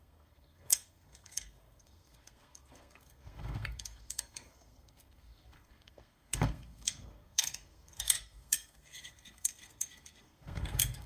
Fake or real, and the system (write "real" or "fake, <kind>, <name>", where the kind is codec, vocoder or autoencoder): fake, codec, SNAC